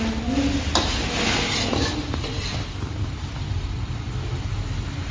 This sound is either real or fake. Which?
real